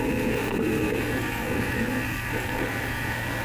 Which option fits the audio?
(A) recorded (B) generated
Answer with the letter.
B